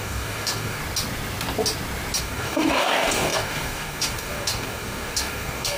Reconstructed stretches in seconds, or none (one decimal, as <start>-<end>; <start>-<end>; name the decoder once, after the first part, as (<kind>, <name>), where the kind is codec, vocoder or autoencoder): 0.0-0.8 (codec, DAC); 2.2-5.8